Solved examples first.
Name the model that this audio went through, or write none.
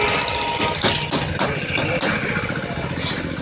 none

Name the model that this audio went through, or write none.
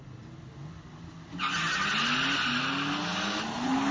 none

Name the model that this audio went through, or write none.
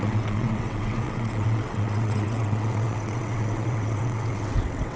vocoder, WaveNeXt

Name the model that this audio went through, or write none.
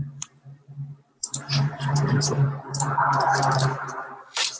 vocoder, BigVGAN v2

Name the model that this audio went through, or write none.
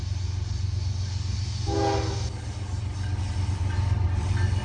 none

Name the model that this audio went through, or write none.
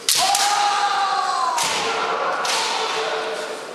none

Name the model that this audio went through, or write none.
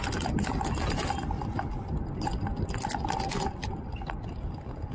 none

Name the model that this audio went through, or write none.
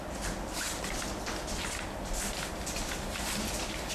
none